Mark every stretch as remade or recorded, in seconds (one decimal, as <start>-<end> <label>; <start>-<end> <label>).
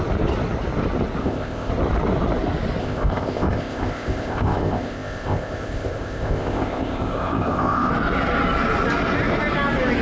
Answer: 0.0-1.2 recorded; 1.2-1.7 remade; 1.7-2.8 recorded; 2.8-7.9 remade; 7.9-10.0 recorded